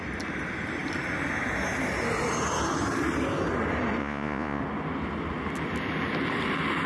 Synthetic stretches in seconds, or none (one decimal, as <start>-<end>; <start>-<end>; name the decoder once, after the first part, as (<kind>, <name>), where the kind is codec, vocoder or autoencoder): 4.0-4.6 (vocoder, Vocos)